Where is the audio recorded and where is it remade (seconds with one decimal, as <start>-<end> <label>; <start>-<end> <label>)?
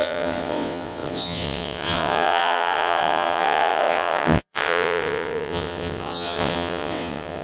0.0-7.4 remade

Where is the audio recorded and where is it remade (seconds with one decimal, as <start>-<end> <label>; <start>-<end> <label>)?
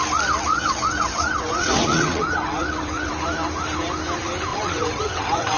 0.0-0.5 recorded; 0.5-3.1 remade; 3.1-4.5 recorded; 4.5-5.6 remade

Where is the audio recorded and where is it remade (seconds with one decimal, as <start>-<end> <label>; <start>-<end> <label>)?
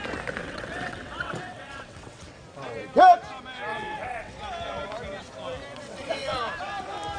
0.0-0.4 recorded; 0.4-2.4 remade; 2.4-3.7 recorded; 3.7-4.3 remade; 4.3-5.7 recorded; 5.7-6.4 remade; 6.4-7.2 recorded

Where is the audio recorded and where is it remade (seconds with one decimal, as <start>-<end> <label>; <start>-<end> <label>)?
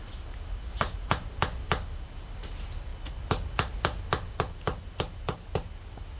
0.0-6.2 recorded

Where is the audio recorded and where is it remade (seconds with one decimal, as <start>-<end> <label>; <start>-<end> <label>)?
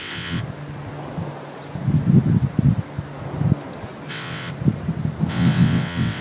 0.0-0.4 remade; 0.4-4.1 recorded; 4.1-4.5 remade; 4.5-5.3 recorded; 5.3-6.2 remade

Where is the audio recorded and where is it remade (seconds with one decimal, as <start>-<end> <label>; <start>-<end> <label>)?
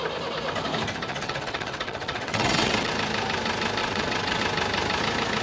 0.0-1.1 recorded; 1.1-2.9 remade; 2.9-3.8 recorded; 3.8-4.4 remade; 4.4-5.4 recorded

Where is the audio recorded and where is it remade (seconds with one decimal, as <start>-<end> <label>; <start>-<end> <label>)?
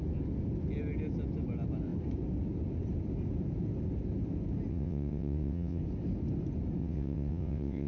0.0-4.7 recorded; 4.7-5.8 remade; 5.8-6.8 recorded; 6.8-7.9 remade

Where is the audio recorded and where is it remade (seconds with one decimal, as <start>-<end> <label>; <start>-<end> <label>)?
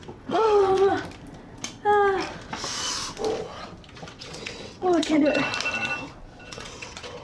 0.0-0.9 remade; 0.9-4.1 recorded; 4.1-5.5 remade; 5.5-6.4 recorded; 6.4-7.2 remade